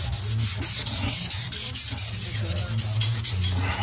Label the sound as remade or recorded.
recorded